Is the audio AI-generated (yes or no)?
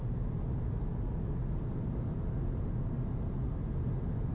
no